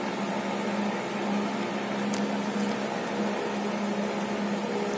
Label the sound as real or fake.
real